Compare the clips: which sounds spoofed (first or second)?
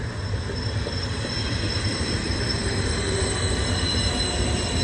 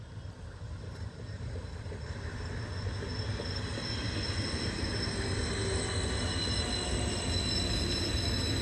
first